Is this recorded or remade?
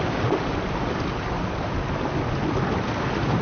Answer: recorded